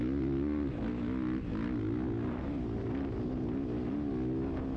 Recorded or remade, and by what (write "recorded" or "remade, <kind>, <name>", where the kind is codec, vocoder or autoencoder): recorded